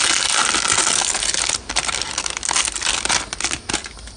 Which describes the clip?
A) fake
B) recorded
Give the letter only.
B